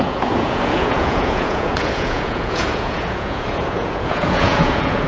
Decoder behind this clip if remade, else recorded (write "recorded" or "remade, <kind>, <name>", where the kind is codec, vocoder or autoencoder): remade, vocoder, Vocos